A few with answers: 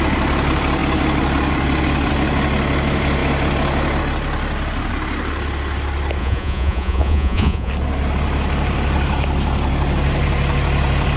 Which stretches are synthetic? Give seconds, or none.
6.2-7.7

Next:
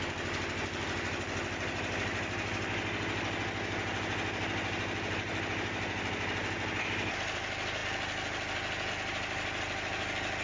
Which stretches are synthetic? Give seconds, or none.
none